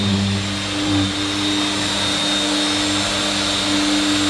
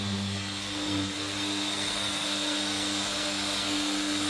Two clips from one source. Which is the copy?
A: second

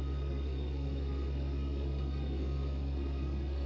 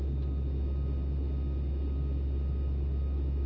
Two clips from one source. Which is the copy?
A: first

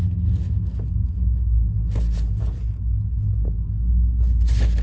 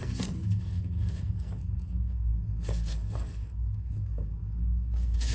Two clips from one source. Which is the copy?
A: second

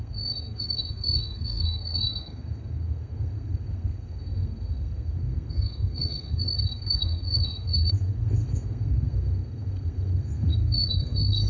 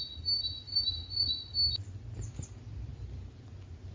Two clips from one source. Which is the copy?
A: first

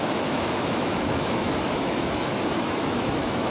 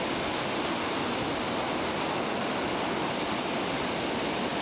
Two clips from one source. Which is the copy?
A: first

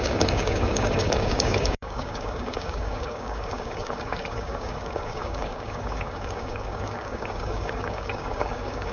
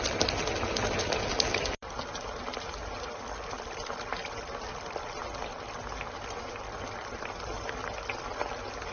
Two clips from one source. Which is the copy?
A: first